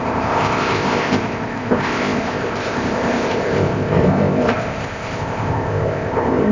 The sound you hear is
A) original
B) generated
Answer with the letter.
B